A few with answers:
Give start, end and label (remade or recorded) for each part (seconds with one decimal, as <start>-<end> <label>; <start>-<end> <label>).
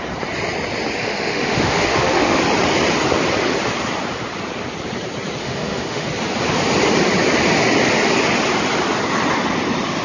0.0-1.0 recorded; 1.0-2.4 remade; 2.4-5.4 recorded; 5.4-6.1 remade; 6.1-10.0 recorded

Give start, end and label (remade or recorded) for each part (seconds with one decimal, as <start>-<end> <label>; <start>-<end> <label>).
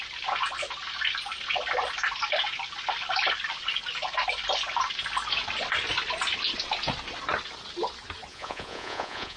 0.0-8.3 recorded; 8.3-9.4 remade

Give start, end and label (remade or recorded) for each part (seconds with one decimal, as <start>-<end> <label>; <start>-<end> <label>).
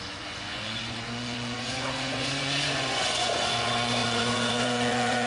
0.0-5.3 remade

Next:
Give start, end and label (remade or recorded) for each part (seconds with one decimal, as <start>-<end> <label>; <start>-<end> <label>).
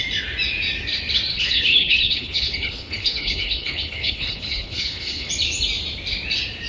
0.0-1.3 recorded; 1.3-5.3 remade; 5.3-6.7 recorded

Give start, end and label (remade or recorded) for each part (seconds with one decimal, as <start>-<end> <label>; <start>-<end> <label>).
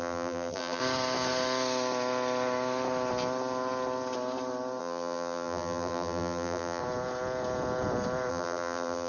0.0-0.8 remade; 0.8-4.8 recorded; 4.8-6.8 remade; 6.8-8.3 recorded; 8.3-9.1 remade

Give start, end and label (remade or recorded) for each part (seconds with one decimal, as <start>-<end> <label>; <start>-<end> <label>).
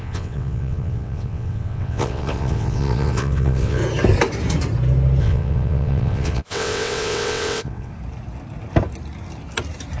0.0-3.8 remade; 3.8-5.2 recorded; 5.2-7.9 remade; 7.9-10.0 recorded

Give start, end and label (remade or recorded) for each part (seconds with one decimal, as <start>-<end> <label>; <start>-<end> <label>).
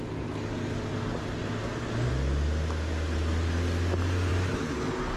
0.0-4.3 recorded; 4.3-4.8 remade; 4.8-5.2 recorded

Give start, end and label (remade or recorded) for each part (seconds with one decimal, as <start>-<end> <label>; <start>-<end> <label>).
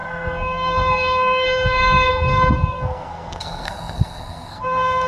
0.0-5.1 remade